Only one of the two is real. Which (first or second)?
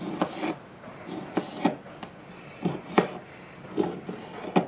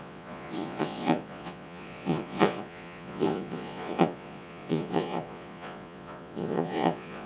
first